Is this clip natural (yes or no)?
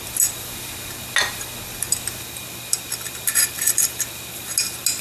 yes